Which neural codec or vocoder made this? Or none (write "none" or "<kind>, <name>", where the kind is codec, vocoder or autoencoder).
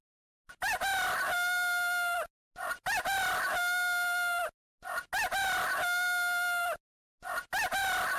none